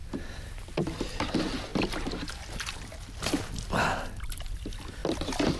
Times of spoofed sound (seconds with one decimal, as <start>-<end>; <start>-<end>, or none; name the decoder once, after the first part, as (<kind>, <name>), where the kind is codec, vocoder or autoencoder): none